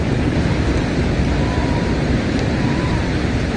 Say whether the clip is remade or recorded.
remade